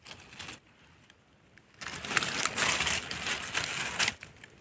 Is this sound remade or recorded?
recorded